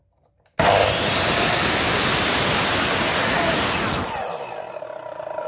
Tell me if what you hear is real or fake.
real